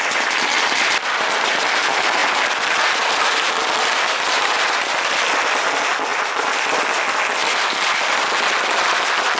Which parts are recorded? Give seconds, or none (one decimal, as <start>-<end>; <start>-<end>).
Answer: 0.0-6.1; 6.8-7.4; 8.2-9.4